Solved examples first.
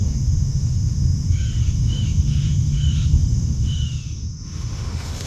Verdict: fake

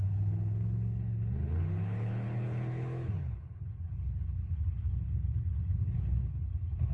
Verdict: fake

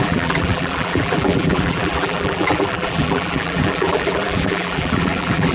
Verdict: fake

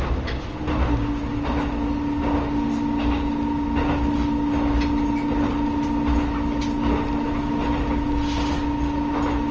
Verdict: real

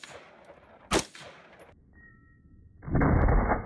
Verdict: real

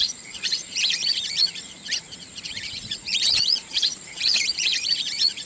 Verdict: fake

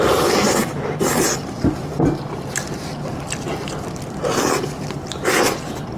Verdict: fake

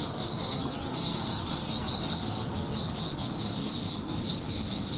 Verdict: fake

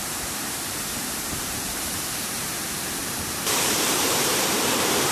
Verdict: fake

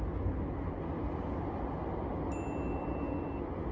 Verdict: real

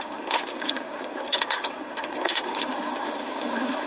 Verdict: fake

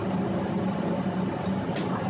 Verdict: real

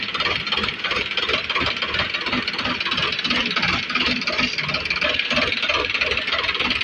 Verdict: real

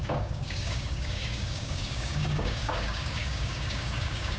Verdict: fake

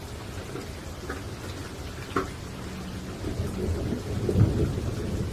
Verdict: real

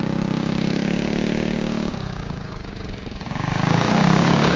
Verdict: fake